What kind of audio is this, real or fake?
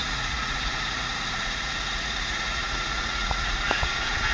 fake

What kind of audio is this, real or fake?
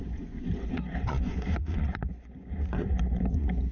fake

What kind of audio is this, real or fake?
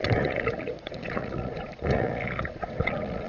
fake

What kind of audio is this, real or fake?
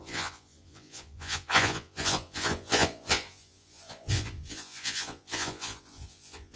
fake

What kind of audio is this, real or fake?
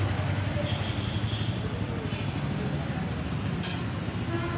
real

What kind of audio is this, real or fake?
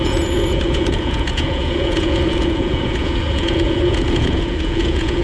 fake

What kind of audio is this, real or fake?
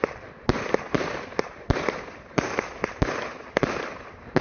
real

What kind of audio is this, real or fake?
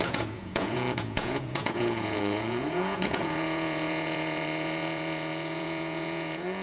fake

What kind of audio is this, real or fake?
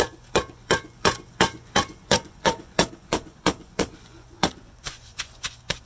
fake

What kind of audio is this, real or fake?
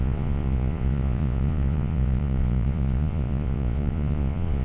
fake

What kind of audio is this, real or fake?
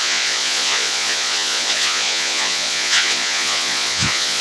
fake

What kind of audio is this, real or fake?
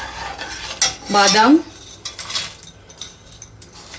real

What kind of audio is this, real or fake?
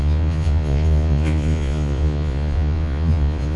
fake